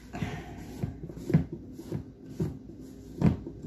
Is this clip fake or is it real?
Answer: real